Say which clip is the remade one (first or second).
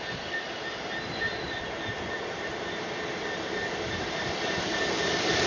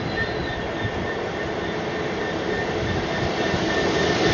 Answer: first